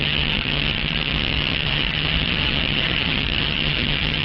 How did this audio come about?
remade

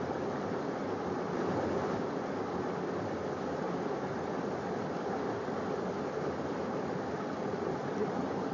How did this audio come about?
recorded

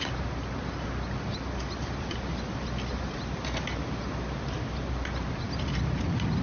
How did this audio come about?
recorded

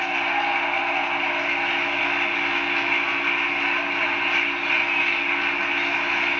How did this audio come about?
recorded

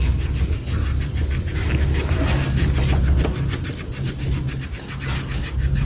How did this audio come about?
recorded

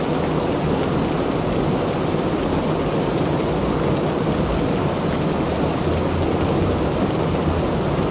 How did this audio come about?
recorded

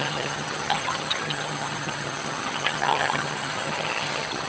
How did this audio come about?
remade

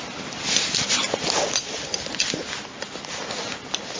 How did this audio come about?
recorded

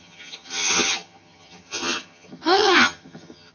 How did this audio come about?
remade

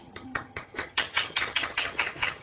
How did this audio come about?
remade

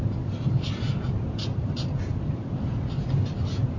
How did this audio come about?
recorded